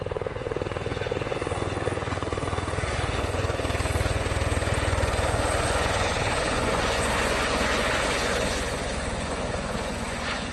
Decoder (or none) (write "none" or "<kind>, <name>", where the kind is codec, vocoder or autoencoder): vocoder, Vocos